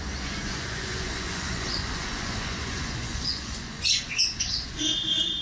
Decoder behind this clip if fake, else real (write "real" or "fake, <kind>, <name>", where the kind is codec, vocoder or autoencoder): fake, vocoder, Vocos